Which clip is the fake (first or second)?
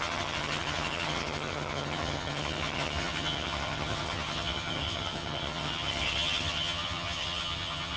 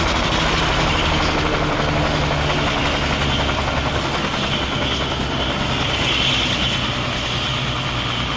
first